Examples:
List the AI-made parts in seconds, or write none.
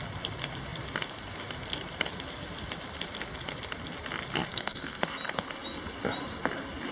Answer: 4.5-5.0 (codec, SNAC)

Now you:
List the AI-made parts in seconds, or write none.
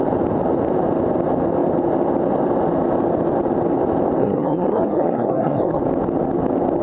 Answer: 4.2-5.8 (codec, SNAC)